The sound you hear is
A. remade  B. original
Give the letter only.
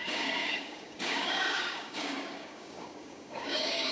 A